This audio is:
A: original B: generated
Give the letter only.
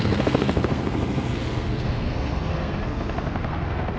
B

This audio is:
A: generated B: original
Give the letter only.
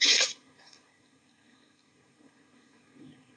A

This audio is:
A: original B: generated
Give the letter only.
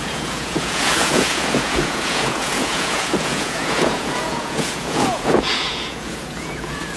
B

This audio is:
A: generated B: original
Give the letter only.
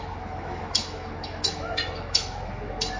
A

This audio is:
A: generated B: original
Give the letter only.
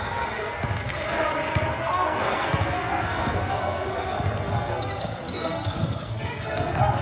A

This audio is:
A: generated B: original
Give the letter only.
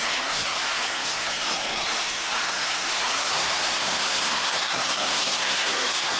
A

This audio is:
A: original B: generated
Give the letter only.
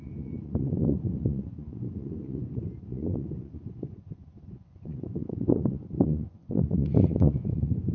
B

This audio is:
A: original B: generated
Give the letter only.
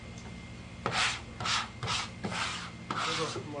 A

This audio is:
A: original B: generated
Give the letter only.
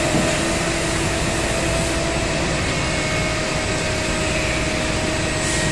A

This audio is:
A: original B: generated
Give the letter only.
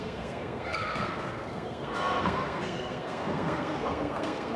B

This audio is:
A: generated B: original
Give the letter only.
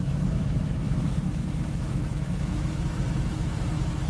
A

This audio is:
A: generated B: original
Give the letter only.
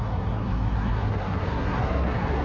A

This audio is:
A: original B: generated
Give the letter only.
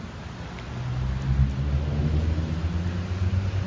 A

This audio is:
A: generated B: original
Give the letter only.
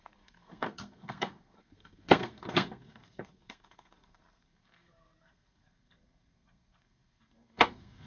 A